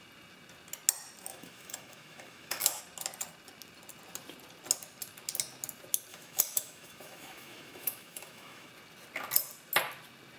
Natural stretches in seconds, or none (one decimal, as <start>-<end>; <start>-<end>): 0.0-1.3; 2.8-6.1; 8.7-10.4